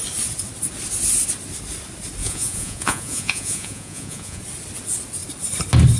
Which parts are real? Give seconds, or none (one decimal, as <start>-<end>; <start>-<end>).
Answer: 0.0-2.2; 4.4-6.0